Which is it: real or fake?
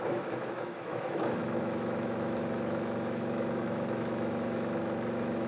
fake